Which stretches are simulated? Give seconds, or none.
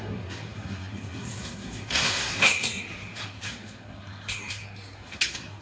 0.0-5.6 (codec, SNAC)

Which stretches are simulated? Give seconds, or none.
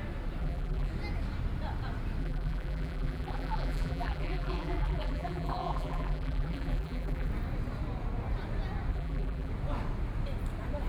0.4-0.9 (vocoder, BigVGAN v2); 2.2-7.3; 8.9-9.5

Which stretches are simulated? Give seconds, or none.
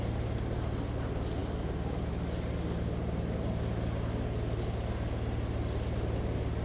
none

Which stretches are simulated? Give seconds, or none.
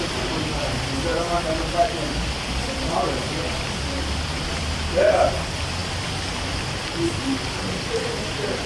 0.0-1.1 (vocoder, BigVGAN v2); 2.1-5.8